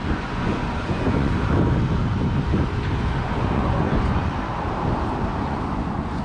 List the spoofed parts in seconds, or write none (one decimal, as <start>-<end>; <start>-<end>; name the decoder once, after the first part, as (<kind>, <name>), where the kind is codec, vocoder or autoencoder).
0.0-1.3 (vocoder, Vocos); 3.2-4.4; 5.3-6.2

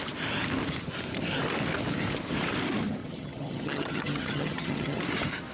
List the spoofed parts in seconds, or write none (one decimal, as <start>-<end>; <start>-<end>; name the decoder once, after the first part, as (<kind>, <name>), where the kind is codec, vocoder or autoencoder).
3.0-5.0 (vocoder, HiFi-GAN)

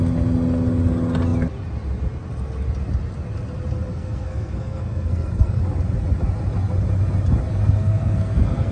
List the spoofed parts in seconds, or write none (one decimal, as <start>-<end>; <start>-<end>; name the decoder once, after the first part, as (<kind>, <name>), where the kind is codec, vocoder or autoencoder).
3.9-5.6 (codec, SNAC); 7.5-8.7

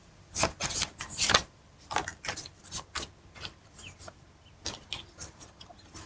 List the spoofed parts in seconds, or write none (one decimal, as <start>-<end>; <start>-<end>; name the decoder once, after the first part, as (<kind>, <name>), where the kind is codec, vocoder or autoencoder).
none